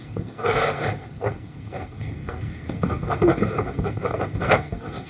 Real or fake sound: fake